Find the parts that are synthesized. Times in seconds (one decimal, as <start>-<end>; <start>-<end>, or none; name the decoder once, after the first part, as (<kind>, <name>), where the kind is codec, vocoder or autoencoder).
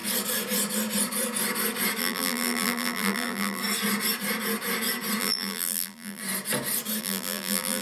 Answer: 2.0-3.6 (vocoder, BigVGAN v2); 5.2-6.2; 7.0-7.8